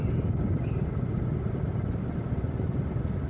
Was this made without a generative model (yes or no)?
yes